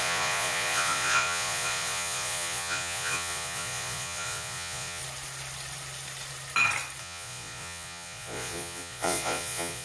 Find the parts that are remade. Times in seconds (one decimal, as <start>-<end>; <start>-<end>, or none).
0.0-5.0; 7.0-9.8